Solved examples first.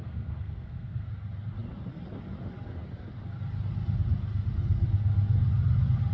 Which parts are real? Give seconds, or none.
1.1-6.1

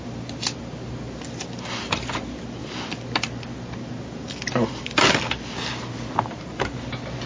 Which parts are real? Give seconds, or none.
0.0-7.3